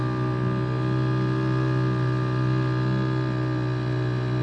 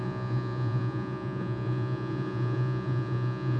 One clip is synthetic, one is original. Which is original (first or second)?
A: first